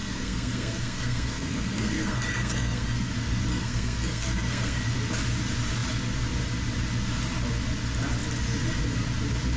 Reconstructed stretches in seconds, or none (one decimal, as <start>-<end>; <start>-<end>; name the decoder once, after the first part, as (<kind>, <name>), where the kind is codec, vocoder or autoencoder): 0.0-3.1 (codec, SNAC); 3.5-4.8